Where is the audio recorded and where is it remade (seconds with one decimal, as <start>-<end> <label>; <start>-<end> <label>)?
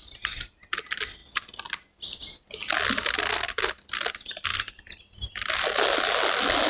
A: 0.0-4.5 recorded; 4.5-5.6 remade; 5.6-6.7 recorded